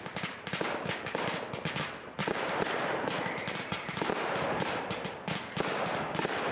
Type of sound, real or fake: real